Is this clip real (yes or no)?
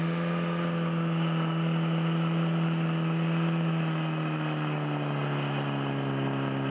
yes